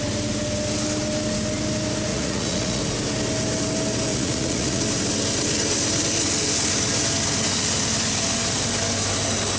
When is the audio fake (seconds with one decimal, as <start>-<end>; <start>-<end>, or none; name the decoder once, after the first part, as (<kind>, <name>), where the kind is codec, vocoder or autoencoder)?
2.1-2.8 (vocoder, Vocos); 4.1-4.8